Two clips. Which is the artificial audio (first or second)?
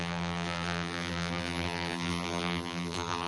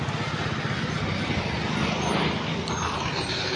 first